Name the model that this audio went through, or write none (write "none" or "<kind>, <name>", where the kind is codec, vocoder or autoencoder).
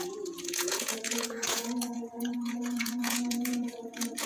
vocoder, Vocos